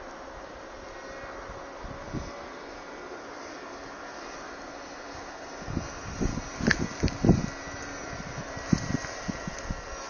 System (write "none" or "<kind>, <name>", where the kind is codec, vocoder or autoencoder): none